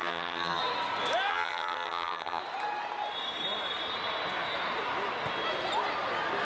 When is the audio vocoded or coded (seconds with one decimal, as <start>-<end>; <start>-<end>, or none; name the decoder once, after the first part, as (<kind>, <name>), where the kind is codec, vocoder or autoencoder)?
0.0-0.6 (vocoder, HiFi-GAN); 1.3-2.4